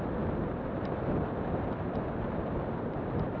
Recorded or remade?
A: remade